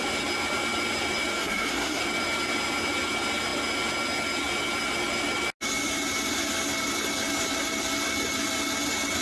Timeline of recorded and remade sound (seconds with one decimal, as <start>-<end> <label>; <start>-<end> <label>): 0.0-1.4 recorded; 1.4-2.0 remade; 2.0-9.2 recorded